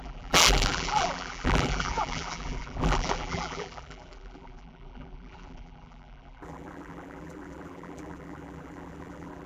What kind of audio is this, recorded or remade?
remade